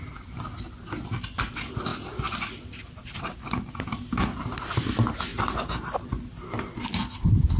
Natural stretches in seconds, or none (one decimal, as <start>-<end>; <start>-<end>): 0.0-7.6

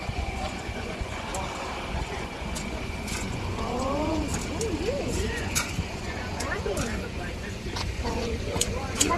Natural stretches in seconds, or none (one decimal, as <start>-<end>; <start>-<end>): 1.3-1.9; 4.3-4.9